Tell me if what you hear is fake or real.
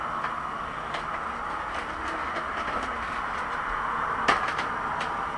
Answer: real